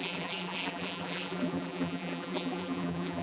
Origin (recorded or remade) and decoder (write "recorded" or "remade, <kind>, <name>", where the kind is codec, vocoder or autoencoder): remade, vocoder, BigVGAN v2